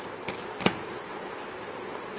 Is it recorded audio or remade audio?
recorded